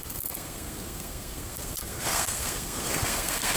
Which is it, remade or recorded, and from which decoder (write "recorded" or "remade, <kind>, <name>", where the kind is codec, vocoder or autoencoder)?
remade, codec, SNAC